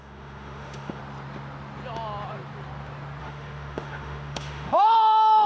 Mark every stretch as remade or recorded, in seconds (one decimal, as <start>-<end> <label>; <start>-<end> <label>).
0.0-1.0 remade; 1.0-3.2 recorded; 3.2-5.5 remade